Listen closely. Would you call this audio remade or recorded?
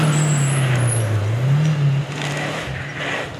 recorded